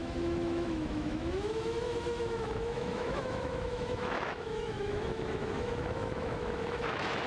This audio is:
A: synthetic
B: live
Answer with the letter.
A